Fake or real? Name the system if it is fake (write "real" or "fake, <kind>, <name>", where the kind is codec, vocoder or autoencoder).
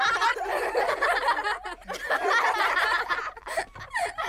real